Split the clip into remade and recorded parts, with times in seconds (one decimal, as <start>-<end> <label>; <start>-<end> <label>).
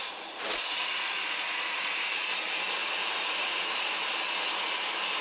0.0-2.2 remade; 2.2-2.8 recorded; 2.8-3.9 remade; 3.9-5.2 recorded